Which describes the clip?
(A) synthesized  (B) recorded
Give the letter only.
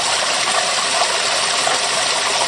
B